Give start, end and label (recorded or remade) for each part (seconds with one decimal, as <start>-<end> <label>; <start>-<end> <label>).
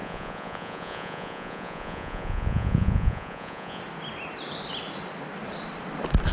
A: 0.0-3.8 remade; 3.8-6.3 recorded